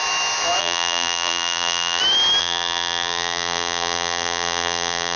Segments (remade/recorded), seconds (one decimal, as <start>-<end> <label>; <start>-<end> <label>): 0.0-0.6 recorded; 0.6-2.0 remade; 2.0-2.4 recorded; 2.4-5.2 remade